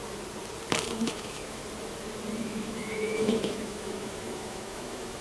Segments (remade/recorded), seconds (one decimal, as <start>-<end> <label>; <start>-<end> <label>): 0.0-0.9 recorded; 0.9-1.6 remade; 1.6-2.4 recorded; 2.4-5.2 remade